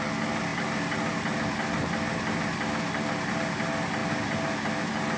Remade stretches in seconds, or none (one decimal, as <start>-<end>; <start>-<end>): none